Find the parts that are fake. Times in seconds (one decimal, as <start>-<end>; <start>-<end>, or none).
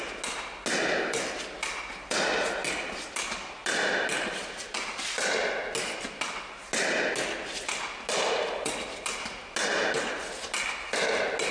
none